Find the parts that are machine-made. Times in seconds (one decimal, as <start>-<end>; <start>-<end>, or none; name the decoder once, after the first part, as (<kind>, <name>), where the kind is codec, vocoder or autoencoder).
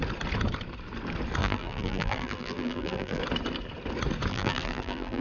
1.4-3.2 (vocoder, BigVGAN v2); 4.3-5.2